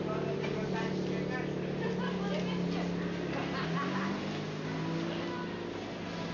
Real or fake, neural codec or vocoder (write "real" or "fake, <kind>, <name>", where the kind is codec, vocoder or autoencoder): real